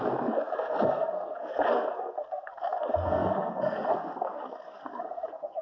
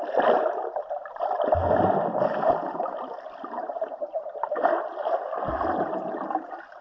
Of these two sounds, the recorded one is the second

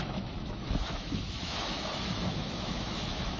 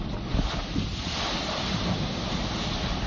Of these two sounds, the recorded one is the second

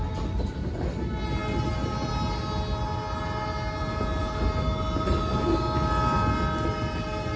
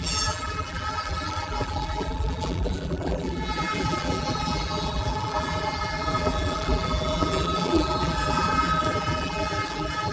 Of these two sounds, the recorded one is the first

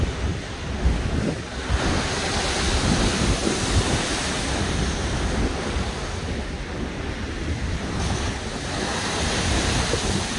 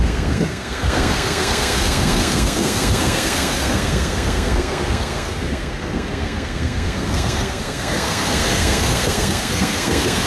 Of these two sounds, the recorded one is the first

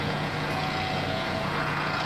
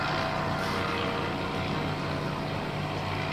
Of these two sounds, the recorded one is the second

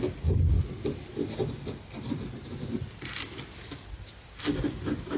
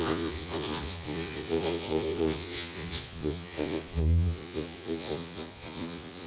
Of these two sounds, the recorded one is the first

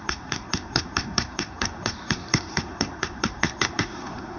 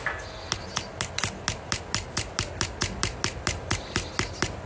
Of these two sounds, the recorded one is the second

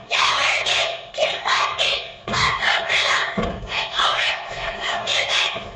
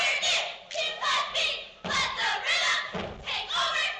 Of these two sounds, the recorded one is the second